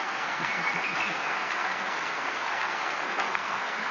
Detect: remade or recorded remade